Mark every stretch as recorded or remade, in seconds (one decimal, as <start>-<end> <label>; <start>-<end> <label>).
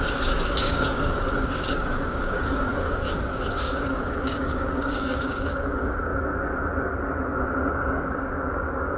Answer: 0.0-6.1 remade; 6.1-7.7 recorded; 7.7-9.0 remade